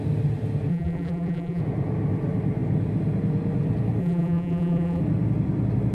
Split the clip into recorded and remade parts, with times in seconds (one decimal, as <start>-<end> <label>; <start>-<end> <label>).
0.0-0.7 recorded; 0.7-1.6 remade; 1.6-4.0 recorded; 4.0-5.0 remade; 5.0-5.9 recorded